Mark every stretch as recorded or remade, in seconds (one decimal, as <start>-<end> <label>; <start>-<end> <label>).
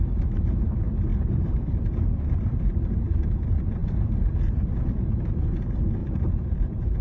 0.0-7.0 remade